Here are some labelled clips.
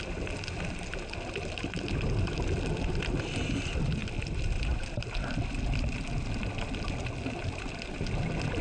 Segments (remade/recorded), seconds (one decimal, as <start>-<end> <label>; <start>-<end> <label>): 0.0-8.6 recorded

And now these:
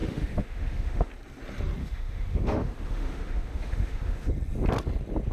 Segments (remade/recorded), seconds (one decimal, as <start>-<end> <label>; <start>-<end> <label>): 0.0-1.1 remade; 1.1-1.8 recorded; 1.8-4.3 remade; 4.3-5.3 recorded

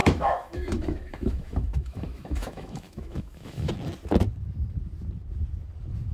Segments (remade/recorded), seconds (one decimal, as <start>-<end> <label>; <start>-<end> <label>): 0.0-3.7 remade; 3.7-6.1 recorded

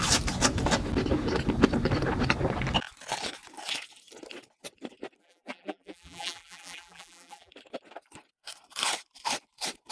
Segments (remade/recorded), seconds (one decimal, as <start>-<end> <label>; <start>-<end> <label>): 0.0-5.2 recorded; 5.2-7.5 remade; 7.5-9.9 recorded

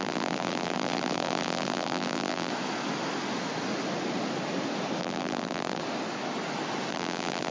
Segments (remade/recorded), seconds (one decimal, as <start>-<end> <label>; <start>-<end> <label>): 0.0-2.5 remade; 2.5-5.0 recorded; 5.0-5.8 remade; 5.8-6.9 recorded; 6.9-7.5 remade

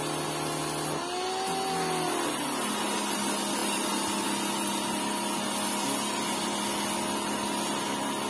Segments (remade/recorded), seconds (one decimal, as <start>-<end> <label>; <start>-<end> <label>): 0.0-8.3 recorded

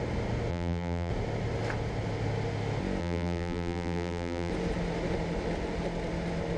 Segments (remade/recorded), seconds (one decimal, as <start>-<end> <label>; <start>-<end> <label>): 0.0-0.5 recorded; 0.5-1.1 remade; 1.1-3.0 recorded; 3.0-4.5 remade; 4.5-6.6 recorded

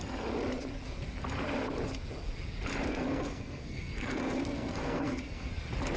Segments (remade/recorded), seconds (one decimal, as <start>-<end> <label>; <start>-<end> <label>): 0.0-2.9 recorded; 2.9-5.5 remade; 5.5-6.0 recorded